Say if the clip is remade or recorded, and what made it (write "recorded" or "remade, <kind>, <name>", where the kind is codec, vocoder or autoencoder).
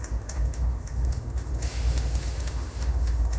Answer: remade, autoencoder, DAC-VAE